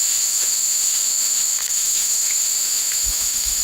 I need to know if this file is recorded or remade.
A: remade